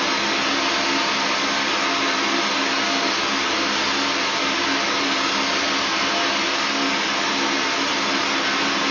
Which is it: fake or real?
real